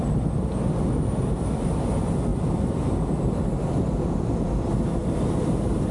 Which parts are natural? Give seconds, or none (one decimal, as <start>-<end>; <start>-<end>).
0.0-2.3; 3.0-5.0

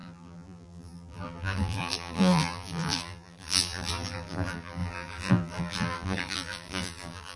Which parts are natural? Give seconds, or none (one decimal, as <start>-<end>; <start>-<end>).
none